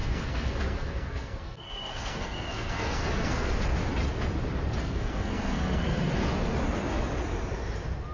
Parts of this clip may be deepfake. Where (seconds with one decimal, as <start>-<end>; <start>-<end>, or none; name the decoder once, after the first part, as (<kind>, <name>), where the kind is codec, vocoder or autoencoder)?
0.0-3.5 (codec, SNAC); 4.8-6.1